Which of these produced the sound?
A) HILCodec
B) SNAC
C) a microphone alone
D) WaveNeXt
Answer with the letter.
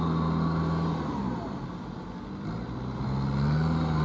C